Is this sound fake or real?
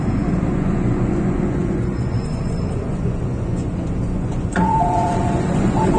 fake